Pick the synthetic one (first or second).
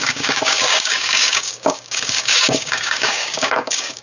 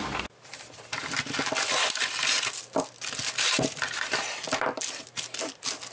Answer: first